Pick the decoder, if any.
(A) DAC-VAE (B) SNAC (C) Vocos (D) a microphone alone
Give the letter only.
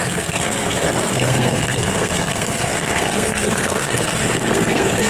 B